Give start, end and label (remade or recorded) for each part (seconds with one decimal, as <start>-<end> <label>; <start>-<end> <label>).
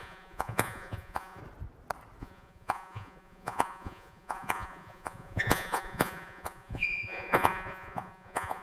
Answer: 0.0-1.4 remade; 1.4-2.2 recorded; 2.2-8.6 remade